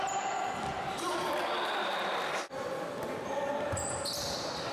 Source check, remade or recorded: remade